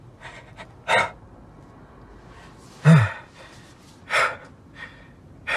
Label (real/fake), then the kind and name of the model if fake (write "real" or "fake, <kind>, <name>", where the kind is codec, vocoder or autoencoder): real